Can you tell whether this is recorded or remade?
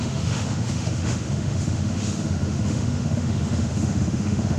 remade